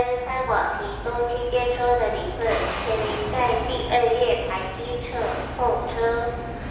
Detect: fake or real real